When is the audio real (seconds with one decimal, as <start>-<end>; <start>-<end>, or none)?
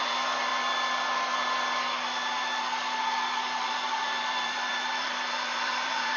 0.5-3.6